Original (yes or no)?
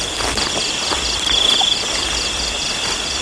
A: yes